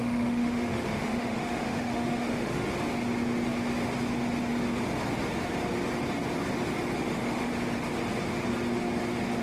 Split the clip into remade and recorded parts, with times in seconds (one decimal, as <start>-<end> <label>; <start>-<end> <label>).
0.0-2.6 remade; 2.6-7.1 recorded; 7.1-7.5 remade; 7.5-9.4 recorded